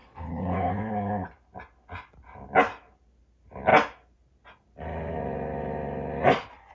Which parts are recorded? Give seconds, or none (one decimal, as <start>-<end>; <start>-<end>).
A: 0.7-6.7